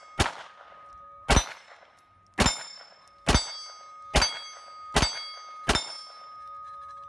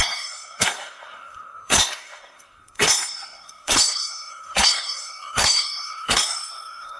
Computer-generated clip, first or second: second